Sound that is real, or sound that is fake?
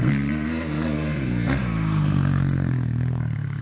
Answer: fake